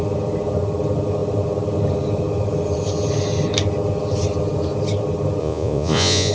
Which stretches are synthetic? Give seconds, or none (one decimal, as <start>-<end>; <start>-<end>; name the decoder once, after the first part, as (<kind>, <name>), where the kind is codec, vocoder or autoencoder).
5.4-6.3 (vocoder, Vocos)